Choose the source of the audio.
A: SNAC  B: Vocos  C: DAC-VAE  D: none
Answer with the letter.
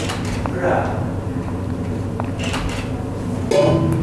D